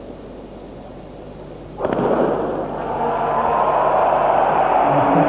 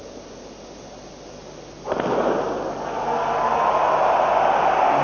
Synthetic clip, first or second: first